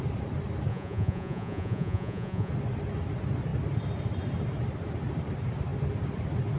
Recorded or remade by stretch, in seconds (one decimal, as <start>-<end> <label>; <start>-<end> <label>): 0.0-0.7 recorded; 0.7-2.5 remade; 2.5-6.6 recorded